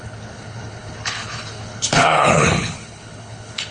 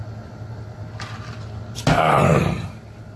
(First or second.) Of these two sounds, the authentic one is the second